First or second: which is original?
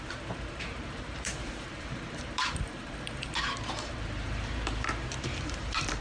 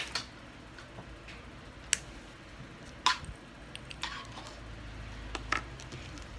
second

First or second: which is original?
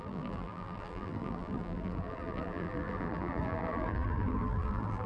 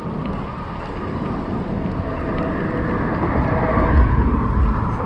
second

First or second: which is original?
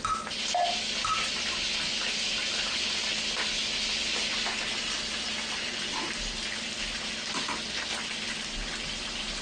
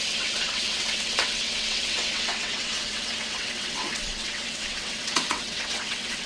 first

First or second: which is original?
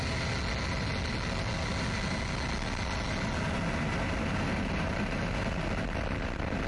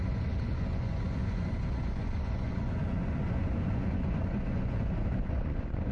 first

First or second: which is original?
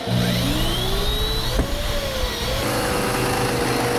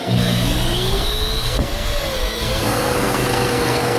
first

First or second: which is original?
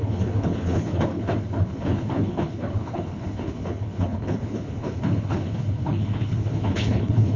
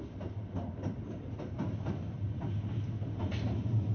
second